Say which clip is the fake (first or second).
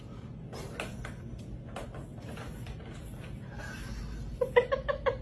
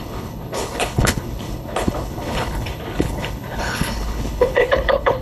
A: second